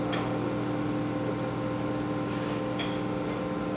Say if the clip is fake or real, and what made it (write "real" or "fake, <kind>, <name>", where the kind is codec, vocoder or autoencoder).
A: real